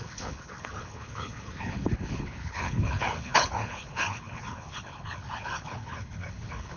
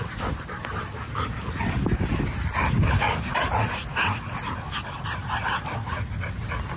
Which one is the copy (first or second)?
first